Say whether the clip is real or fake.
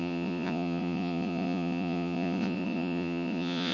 fake